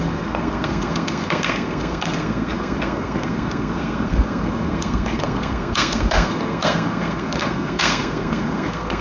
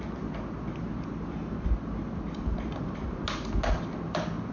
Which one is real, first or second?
second